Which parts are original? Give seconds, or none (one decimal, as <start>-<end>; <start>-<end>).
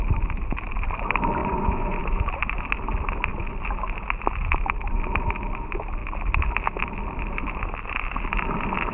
0.0-1.4; 2.0-8.9